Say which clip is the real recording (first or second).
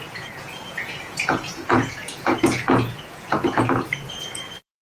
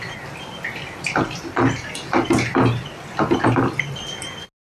second